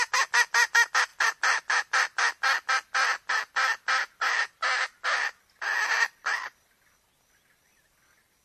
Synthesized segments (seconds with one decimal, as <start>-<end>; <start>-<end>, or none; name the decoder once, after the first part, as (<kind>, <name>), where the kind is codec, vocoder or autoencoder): 5.9-6.9 (vocoder, BigVGAN v2)